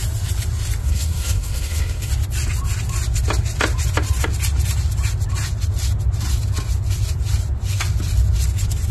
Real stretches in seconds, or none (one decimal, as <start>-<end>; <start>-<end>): 0.0-0.8; 2.1-8.9

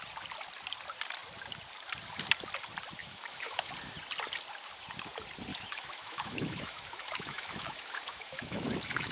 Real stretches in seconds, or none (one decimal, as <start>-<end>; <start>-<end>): 0.0-3.0; 3.7-5.5

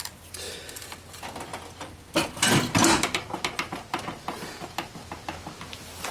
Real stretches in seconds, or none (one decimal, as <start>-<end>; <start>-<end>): 0.0-6.1

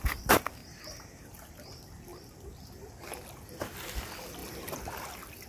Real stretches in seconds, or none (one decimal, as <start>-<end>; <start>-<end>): 0.0-0.6; 1.5-2.1; 2.7-5.5

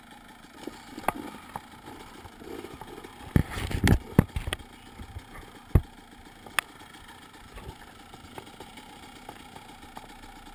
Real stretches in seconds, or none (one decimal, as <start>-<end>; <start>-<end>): 0.0-10.5